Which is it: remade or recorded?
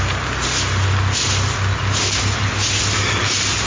recorded